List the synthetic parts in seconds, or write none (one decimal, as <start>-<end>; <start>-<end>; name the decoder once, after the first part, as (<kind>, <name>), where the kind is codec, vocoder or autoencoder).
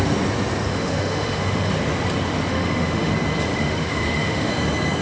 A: 0.7-1.7 (autoencoder, DAC-VAE); 2.5-3.1; 3.5-4.5